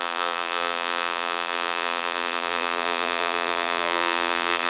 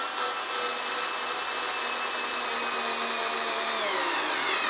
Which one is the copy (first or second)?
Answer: first